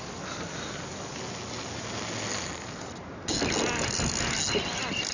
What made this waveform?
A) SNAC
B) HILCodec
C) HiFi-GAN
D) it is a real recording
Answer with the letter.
D